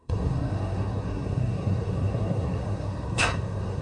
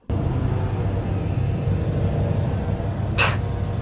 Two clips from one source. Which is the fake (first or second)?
first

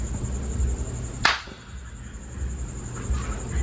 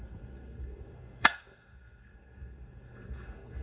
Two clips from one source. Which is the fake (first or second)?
second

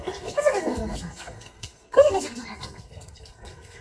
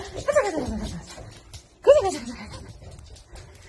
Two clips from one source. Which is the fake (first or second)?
first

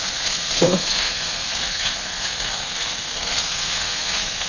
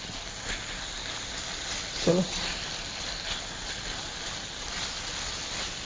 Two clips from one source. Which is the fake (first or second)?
first